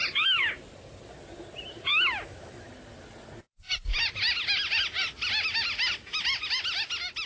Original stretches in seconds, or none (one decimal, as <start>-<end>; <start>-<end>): 0.0-1.9; 2.7-7.3